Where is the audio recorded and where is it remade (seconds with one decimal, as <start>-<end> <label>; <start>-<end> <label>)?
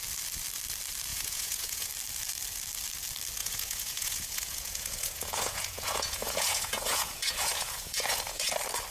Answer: 0.0-1.1 recorded; 1.1-1.9 remade; 1.9-3.4 recorded; 3.4-8.5 remade; 8.5-8.9 recorded